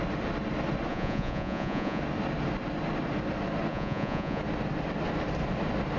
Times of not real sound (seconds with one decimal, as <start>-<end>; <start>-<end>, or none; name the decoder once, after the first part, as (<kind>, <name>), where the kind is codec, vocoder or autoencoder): 0.9-2.0 (vocoder, Vocos); 3.7-4.4